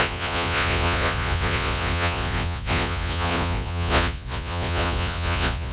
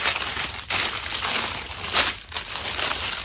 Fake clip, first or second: first